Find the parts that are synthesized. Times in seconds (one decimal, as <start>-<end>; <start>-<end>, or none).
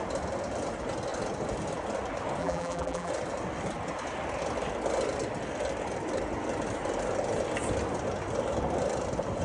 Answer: 2.4-3.1